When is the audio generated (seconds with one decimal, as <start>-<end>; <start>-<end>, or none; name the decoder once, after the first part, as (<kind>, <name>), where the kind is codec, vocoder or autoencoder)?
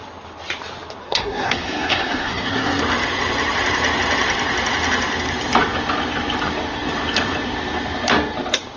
1.0-2.8 (codec, SNAC)